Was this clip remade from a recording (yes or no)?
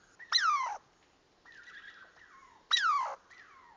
no